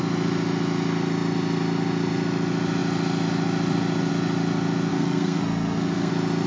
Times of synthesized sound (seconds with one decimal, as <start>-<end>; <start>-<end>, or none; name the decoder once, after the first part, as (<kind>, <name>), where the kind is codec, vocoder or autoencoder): 4.9-6.1 (codec, SNAC)